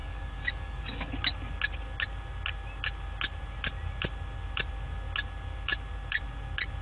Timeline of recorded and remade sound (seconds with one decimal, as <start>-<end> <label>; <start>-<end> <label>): 0.0-1.1 remade; 1.1-6.8 recorded